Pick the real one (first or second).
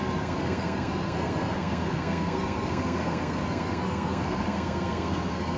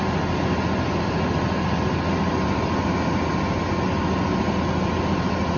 second